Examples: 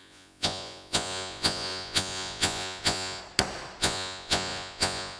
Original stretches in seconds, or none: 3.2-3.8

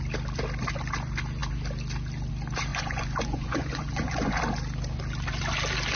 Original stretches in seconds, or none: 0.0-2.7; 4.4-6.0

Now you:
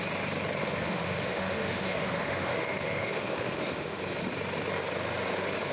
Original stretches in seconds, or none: 0.0-0.6; 4.0-5.7

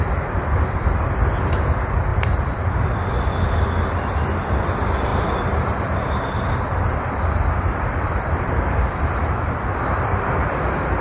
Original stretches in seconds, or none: none

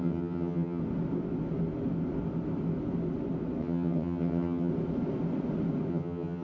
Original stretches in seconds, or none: 0.8-3.6; 4.7-5.9

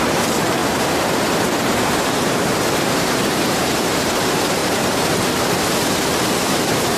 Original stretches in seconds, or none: 4.6-6.5

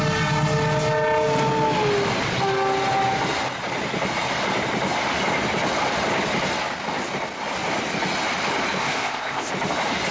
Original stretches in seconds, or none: 0.0-8.8; 9.5-10.1

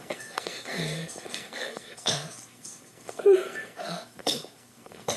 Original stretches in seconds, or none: none